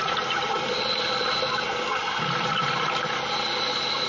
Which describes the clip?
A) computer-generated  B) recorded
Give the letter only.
B